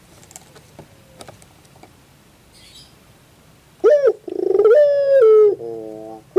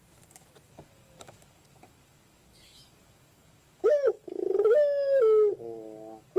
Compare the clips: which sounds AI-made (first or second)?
second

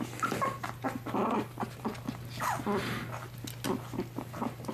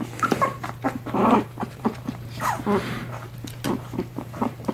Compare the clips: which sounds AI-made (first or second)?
second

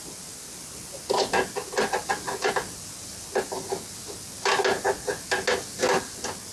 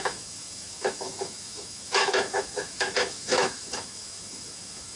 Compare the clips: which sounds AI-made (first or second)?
second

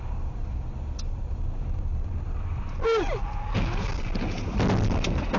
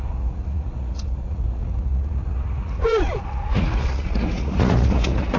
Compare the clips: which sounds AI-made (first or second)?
second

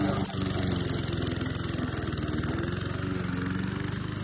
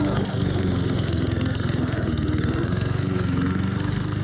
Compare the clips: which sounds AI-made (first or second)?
second